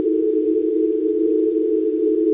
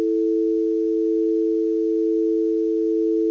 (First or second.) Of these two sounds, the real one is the second